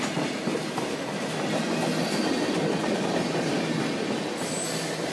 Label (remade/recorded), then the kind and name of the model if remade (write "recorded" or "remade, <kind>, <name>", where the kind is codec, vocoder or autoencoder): recorded